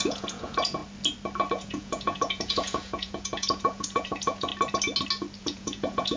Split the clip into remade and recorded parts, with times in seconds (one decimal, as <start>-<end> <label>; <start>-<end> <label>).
0.0-0.8 remade; 0.8-1.5 recorded; 1.5-4.5 remade; 4.5-5.4 recorded; 5.4-6.2 remade